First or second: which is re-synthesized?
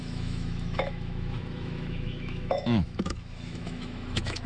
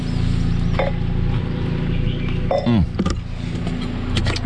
first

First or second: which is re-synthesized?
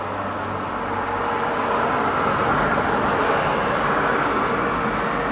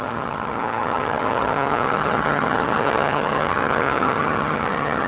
second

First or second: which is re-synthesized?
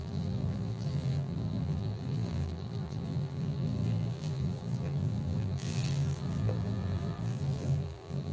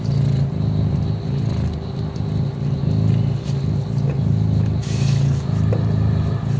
first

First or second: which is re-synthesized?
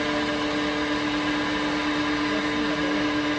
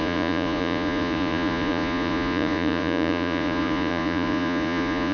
second